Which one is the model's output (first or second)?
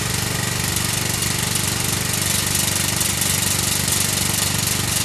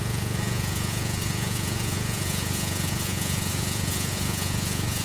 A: second